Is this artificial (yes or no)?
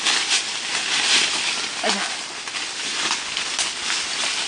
no